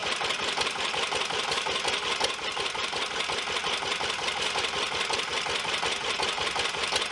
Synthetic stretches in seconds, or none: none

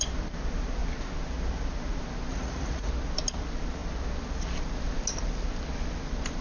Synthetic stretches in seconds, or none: 2.3-2.9 (vocoder, Vocos)